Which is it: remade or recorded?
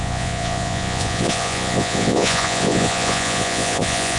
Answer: remade